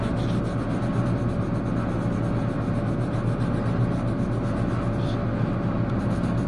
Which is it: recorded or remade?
recorded